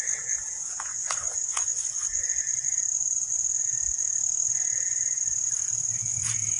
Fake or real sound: fake